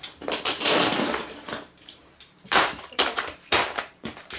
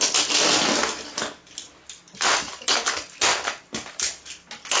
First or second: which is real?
second